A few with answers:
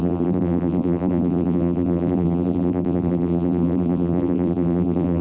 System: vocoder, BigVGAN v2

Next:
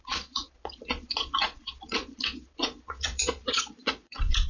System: vocoder, Vocos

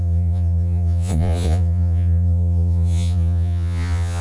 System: vocoder, Vocos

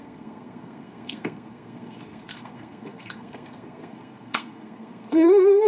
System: codec, SNAC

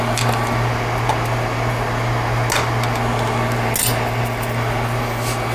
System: none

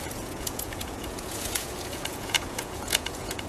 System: vocoder, Vocos